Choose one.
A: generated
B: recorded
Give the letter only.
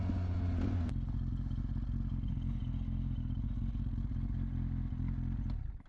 B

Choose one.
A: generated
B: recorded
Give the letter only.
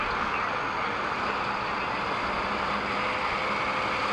B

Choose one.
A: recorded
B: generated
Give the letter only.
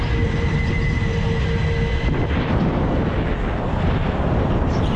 A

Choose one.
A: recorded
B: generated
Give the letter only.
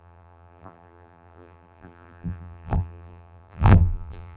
B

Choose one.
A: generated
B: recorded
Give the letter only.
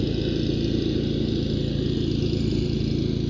B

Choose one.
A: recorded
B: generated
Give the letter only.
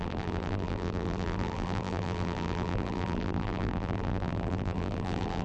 B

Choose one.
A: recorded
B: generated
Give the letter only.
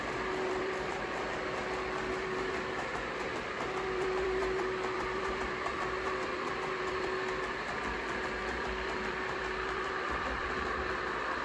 B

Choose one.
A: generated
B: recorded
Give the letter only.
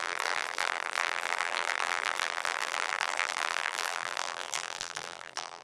A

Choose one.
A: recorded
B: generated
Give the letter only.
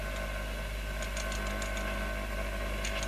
A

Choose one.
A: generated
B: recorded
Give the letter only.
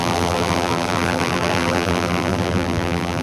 A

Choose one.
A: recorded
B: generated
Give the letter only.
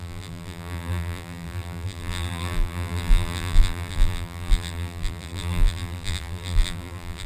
B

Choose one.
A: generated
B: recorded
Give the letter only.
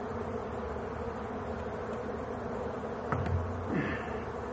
B